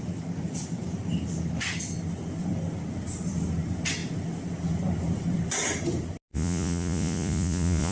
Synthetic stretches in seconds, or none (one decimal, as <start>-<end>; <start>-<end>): 6.3-7.9

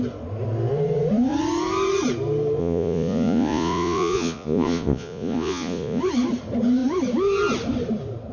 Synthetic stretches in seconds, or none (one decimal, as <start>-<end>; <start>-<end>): 2.6-6.0

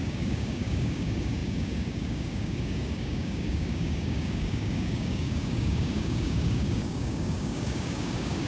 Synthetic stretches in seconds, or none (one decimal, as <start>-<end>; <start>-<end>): 0.0-8.5